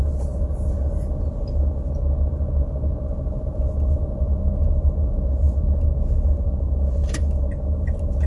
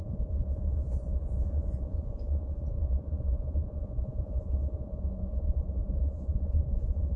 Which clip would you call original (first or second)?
first